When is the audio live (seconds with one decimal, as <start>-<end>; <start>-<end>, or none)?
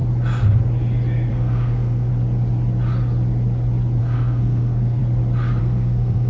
0.0-1.3; 2.1-4.0; 5.0-5.6